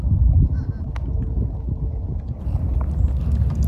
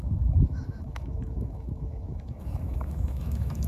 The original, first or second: first